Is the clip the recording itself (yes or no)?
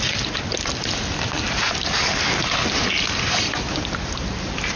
yes